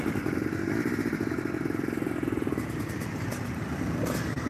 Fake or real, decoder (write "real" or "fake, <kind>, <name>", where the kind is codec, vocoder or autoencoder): real